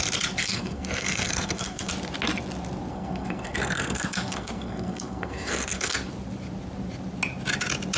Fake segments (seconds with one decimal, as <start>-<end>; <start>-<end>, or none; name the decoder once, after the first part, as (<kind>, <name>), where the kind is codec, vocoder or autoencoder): 0.4-1.9 (codec, SNAC); 2.9-6.1